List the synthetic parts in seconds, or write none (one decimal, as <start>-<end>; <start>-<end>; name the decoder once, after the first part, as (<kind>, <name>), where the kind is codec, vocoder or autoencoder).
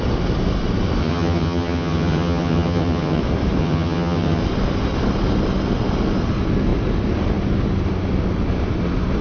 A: 1.0-3.2 (vocoder, HiFi-GAN); 3.6-4.4